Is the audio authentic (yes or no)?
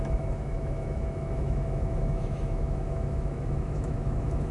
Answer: no